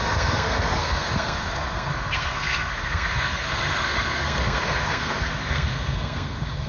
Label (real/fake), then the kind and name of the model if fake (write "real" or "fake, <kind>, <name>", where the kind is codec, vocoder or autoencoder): fake, codec, SNAC